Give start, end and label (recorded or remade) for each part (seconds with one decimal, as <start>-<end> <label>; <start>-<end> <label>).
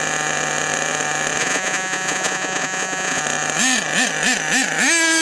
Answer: 0.0-1.4 recorded; 1.4-3.2 remade; 3.2-5.2 recorded